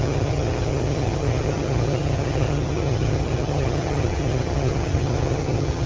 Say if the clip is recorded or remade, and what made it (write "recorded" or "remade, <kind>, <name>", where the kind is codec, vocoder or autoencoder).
remade, vocoder, HiFi-GAN